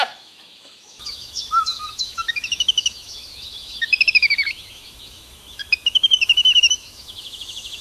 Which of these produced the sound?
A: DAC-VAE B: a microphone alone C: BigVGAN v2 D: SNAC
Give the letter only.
A